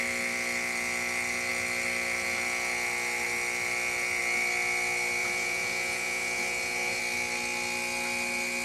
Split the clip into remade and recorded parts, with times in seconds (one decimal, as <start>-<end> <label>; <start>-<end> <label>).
0.0-5.2 recorded; 5.2-7.0 remade; 7.0-8.6 recorded